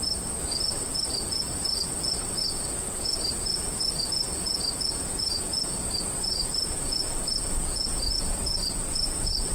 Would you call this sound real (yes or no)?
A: no